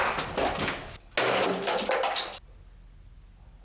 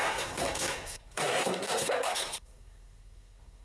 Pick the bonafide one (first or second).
first